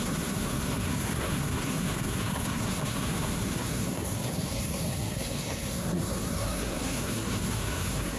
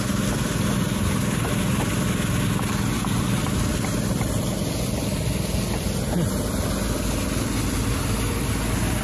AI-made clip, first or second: first